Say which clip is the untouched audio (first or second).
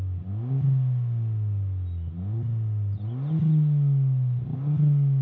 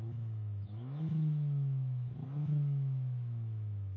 first